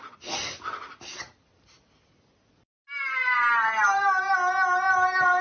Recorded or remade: recorded